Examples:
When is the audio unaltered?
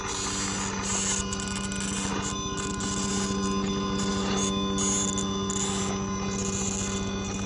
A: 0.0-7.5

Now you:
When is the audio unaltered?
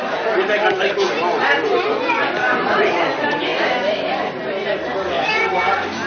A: 0.0-6.1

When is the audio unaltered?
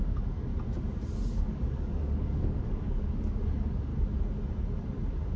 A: 0.5-1.3; 3.9-5.4